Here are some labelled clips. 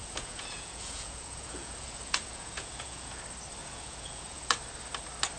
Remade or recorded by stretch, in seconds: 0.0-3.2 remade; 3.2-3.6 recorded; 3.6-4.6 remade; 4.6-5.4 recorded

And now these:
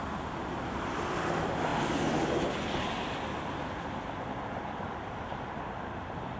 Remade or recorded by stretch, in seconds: 0.0-6.4 recorded